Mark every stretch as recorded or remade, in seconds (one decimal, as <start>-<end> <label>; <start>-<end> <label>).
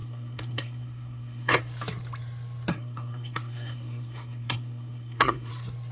0.0-1.6 remade; 1.6-2.7 recorded; 2.7-5.5 remade; 5.5-5.9 recorded